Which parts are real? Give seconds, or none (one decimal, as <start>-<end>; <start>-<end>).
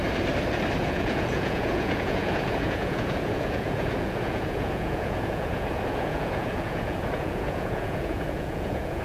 0.0-0.8